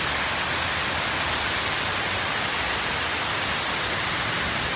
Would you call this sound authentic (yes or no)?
yes